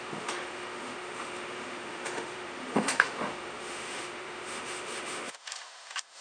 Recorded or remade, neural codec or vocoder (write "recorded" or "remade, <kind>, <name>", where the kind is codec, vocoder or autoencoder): remade, autoencoder, DAC-VAE